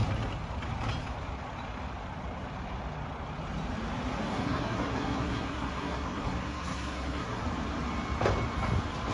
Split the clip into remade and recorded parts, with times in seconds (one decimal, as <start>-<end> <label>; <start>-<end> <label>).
0.0-4.3 recorded; 4.3-7.4 remade; 7.4-9.1 recorded

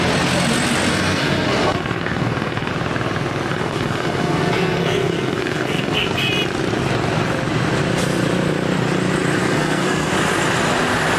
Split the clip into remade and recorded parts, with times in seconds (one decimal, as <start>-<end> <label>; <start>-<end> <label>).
0.0-0.9 recorded; 0.9-2.7 remade; 2.7-3.5 recorded; 3.5-6.3 remade; 6.3-9.4 recorded; 9.4-10.1 remade; 10.1-11.2 recorded

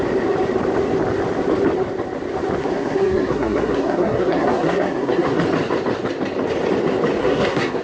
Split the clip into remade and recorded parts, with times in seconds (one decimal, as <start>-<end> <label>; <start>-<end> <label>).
0.0-2.6 recorded; 2.6-5.4 remade; 5.4-7.2 recorded; 7.2-7.8 remade

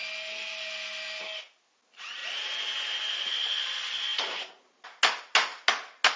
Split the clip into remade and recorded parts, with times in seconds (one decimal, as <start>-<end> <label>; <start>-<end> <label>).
0.0-6.2 recorded

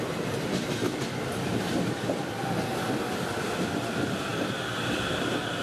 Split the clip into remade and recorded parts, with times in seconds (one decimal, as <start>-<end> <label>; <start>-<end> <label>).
0.0-0.5 remade; 0.5-3.9 recorded; 3.9-4.3 remade; 4.3-5.6 recorded

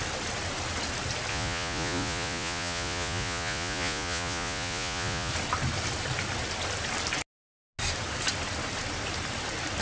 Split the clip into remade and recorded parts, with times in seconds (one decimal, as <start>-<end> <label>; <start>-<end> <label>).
0.0-1.3 recorded; 1.3-5.3 remade; 5.3-9.8 recorded

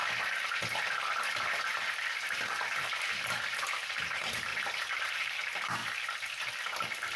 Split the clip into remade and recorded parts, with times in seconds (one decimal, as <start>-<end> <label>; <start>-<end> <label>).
0.0-1.5 recorded; 1.5-4.5 remade; 4.5-5.1 recorded; 5.1-5.8 remade; 5.8-7.2 recorded